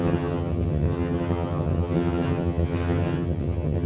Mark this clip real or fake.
fake